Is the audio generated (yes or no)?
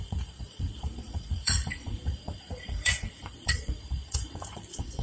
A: yes